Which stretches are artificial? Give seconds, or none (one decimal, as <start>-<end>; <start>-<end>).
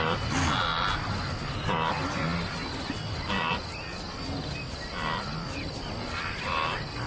none